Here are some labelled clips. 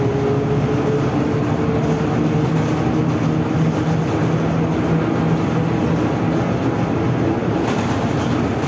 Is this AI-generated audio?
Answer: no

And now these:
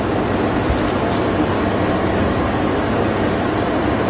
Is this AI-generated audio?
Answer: no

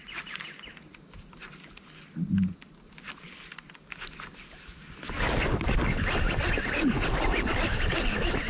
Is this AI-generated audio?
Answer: no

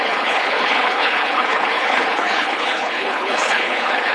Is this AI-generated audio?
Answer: yes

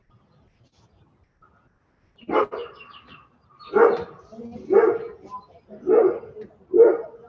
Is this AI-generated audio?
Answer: no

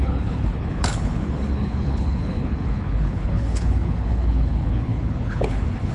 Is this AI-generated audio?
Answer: yes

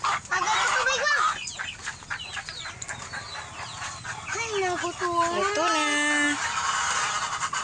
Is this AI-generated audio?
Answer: no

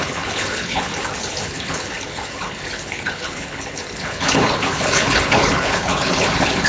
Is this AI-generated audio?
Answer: yes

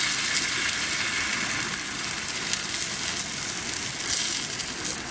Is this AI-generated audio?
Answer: no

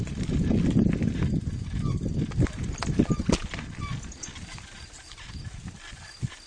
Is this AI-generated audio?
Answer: no